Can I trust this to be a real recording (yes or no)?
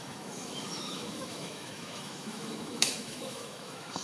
no